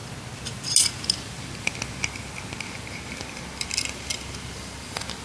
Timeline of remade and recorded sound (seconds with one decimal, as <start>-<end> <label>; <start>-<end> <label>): 0.0-5.2 recorded